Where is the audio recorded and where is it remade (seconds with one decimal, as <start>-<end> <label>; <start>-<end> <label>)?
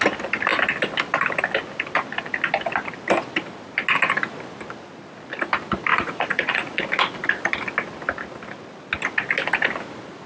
0.0-5.9 recorded; 5.9-6.8 remade; 6.8-10.3 recorded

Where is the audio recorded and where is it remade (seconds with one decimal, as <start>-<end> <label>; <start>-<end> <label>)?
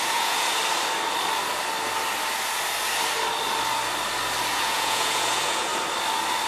0.0-0.6 remade; 0.6-4.5 recorded; 4.5-5.7 remade; 5.7-6.5 recorded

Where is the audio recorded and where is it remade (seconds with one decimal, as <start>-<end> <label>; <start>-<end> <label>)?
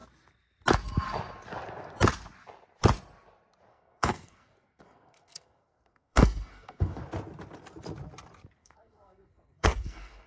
0.0-3.7 recorded; 3.7-7.0 remade; 7.0-8.6 recorded; 8.6-10.3 remade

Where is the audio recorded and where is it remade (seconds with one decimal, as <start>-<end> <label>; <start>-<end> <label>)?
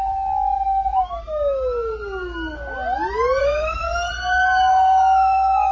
0.0-3.4 recorded; 3.4-4.1 remade; 4.1-4.7 recorded; 4.7-5.7 remade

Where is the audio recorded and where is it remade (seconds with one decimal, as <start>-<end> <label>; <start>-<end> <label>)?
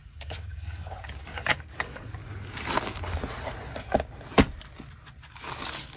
0.0-2.2 remade; 2.2-6.0 recorded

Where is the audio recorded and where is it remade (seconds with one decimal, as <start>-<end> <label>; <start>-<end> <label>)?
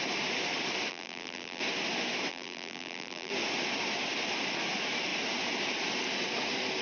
0.0-0.9 recorded; 0.9-1.6 remade; 1.6-2.3 recorded; 2.3-3.3 remade; 3.3-6.8 recorded